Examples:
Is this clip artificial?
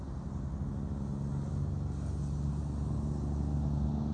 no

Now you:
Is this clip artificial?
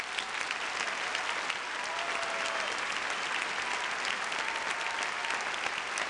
no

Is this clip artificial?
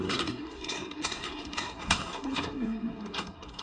yes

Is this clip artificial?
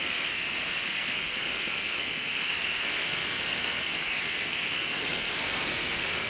yes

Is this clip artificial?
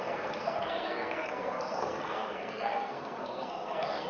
yes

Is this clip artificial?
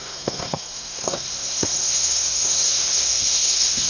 yes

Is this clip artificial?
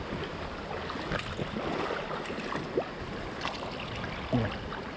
no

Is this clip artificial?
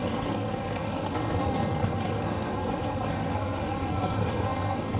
yes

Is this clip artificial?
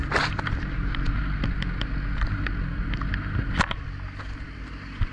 no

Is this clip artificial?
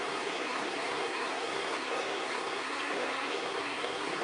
yes